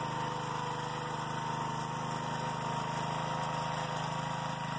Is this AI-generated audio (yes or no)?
no